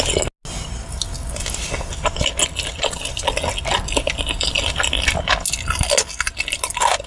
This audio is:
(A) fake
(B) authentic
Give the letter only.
B